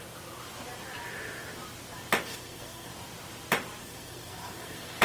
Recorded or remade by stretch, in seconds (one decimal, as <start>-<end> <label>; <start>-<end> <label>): 0.0-2.2 recorded; 2.2-2.9 remade; 2.9-3.8 recorded; 3.8-5.0 remade